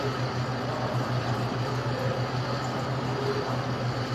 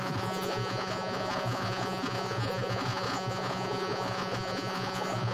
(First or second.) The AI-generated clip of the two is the second